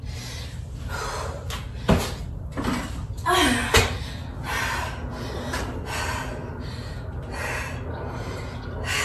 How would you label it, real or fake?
real